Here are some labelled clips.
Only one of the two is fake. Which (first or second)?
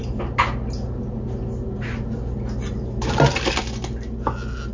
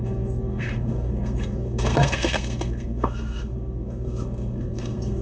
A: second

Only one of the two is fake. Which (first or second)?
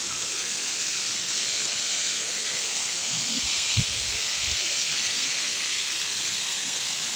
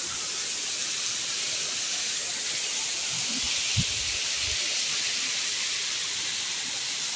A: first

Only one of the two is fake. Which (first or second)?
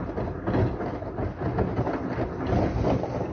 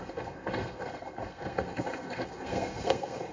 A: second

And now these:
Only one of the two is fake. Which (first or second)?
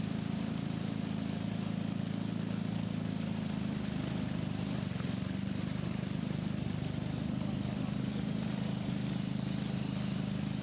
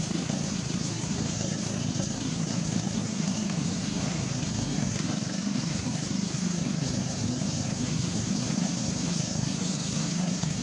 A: second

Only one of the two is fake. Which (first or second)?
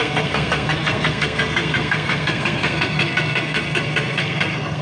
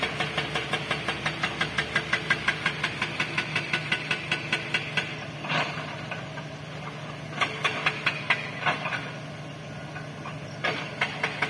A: first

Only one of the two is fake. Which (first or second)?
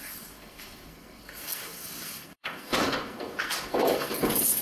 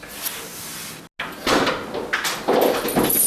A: first